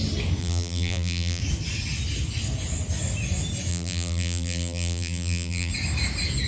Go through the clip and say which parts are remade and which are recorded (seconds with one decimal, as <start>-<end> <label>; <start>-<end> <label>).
0.0-0.4 recorded; 0.4-1.4 remade; 1.4-3.7 recorded; 3.7-5.7 remade; 5.7-6.5 recorded